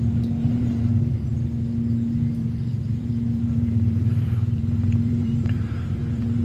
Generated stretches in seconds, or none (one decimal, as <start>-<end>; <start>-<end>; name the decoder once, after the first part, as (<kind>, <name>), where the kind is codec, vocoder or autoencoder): 0.4-1.1 (vocoder, BigVGAN v2); 2.4-6.4